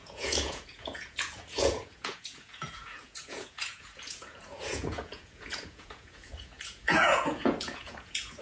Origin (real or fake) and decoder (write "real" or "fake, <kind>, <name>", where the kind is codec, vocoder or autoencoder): fake, vocoder, Vocos